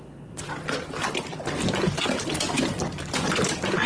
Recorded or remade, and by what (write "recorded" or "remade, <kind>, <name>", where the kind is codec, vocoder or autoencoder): recorded